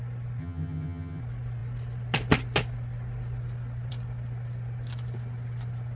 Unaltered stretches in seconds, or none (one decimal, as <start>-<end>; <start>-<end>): 0.0-0.4; 1.2-6.0